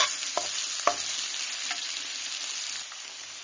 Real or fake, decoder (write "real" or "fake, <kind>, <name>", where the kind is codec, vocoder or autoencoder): real